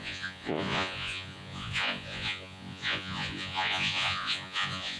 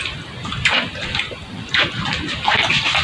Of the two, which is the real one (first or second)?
second